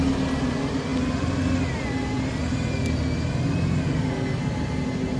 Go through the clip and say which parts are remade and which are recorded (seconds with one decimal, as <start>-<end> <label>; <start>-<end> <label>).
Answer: 0.0-5.2 recorded